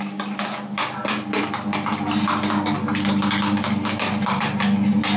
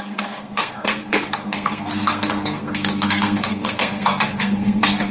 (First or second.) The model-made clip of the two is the second